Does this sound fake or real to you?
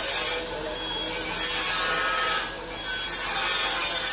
real